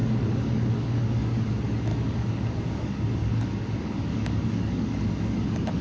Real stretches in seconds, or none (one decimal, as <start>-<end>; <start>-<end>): 1.5-1.9